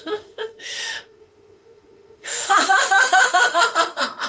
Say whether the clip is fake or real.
fake